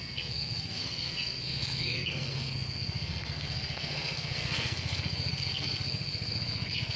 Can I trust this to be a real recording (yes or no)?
no